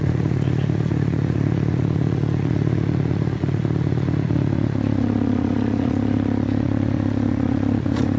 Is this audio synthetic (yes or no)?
yes